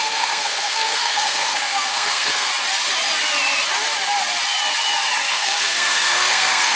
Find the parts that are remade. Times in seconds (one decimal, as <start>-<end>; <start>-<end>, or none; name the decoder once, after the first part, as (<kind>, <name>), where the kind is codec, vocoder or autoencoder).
0.0-2.5 (codec, SNAC); 5.3-6.8